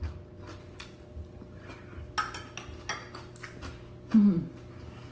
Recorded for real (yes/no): yes